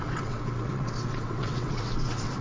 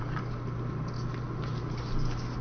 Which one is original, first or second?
second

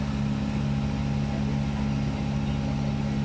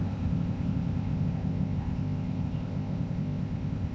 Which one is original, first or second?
first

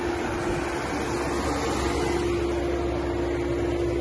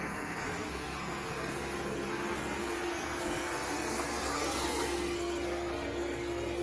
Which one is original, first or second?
first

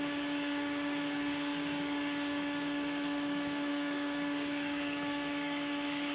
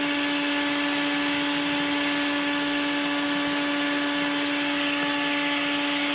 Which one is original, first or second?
second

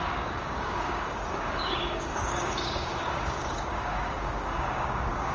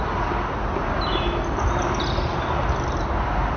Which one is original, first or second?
second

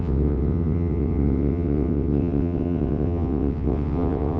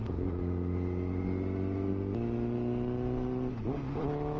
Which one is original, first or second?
second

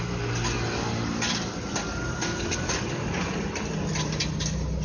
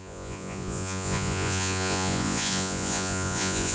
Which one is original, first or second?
first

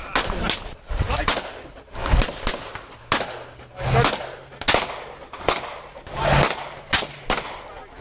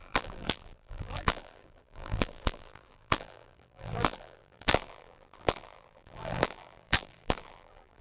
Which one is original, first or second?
first